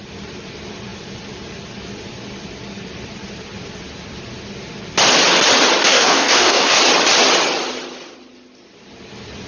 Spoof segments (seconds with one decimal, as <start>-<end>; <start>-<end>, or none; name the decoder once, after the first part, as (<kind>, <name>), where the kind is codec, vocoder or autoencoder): 5.9-6.8 (codec, DAC)